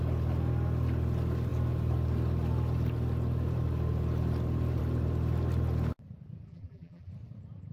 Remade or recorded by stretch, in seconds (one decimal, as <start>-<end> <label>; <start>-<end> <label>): 0.0-6.5 recorded; 6.5-7.1 remade; 7.1-7.7 recorded